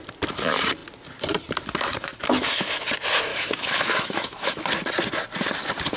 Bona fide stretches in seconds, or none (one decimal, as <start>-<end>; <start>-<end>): 0.0-3.3; 4.5-6.0